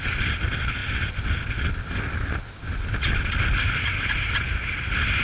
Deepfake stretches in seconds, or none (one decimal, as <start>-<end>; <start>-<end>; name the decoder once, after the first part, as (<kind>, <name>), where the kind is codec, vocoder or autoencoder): none